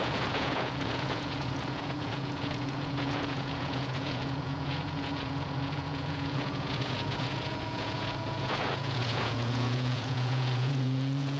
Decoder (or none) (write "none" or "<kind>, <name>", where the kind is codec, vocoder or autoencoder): vocoder, Vocos